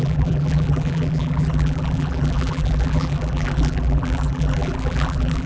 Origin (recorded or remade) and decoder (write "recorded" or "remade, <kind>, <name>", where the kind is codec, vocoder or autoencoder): remade, vocoder, BigVGAN v2